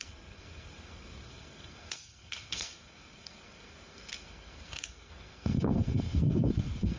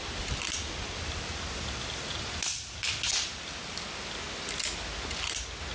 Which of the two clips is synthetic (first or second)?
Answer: first